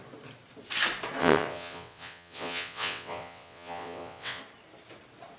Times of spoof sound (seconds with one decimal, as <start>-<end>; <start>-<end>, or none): 1.2-4.4